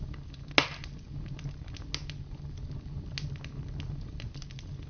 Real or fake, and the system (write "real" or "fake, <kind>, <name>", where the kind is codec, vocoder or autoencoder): real